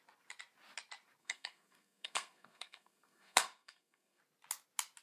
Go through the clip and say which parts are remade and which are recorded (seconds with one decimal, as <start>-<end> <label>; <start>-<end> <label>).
0.0-1.2 recorded; 1.2-4.2 remade; 4.2-5.0 recorded